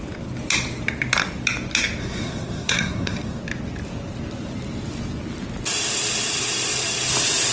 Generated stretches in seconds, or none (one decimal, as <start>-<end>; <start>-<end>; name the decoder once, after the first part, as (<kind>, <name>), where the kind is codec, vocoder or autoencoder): 2.0-3.4 (codec, SNAC)